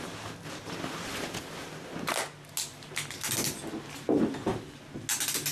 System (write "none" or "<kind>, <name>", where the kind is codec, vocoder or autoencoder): none